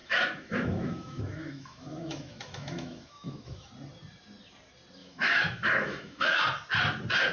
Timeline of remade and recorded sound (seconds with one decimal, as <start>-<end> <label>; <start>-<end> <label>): 0.0-3.7 remade; 3.7-5.0 recorded; 5.0-6.4 remade; 6.4-7.3 recorded